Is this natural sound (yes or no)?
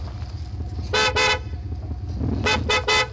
yes